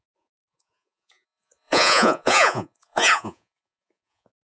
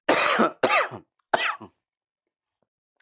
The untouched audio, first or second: second